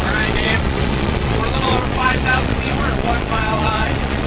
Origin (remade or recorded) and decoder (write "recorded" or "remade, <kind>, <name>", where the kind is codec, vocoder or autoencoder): remade, vocoder, Vocos